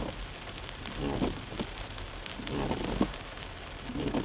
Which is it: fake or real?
real